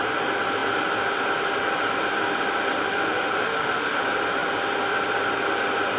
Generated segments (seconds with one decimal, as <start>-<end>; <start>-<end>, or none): 2.8-4.0